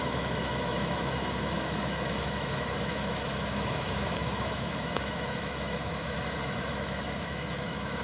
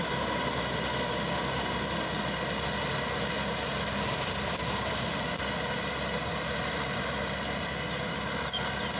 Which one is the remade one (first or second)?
first